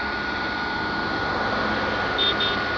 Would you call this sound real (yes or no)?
yes